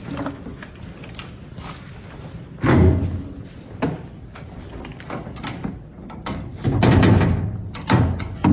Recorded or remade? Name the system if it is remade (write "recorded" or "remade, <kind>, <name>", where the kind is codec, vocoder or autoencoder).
recorded